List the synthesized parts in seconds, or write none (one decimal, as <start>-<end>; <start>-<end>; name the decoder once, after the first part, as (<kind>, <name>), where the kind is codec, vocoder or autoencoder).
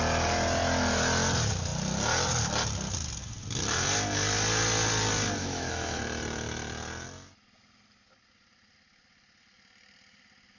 5.4-6.0 (autoencoder, DAC-VAE)